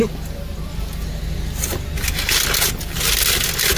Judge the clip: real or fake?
real